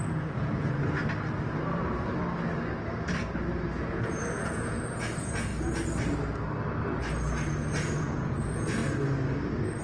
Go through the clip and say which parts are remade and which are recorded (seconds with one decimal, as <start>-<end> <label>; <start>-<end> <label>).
0.0-1.0 remade; 1.0-3.8 recorded; 3.8-5.5 remade; 5.5-8.0 recorded; 8.0-8.8 remade; 8.8-9.8 recorded